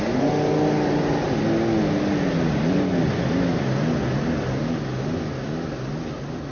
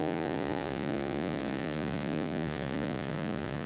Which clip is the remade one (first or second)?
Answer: second